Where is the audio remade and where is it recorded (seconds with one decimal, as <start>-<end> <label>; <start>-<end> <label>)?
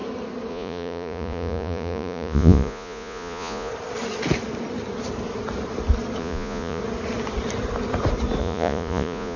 0.0-0.5 recorded; 0.5-3.7 remade; 3.7-6.2 recorded; 6.2-6.8 remade; 6.8-8.4 recorded; 8.4-9.4 remade